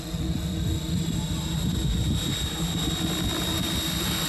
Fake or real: real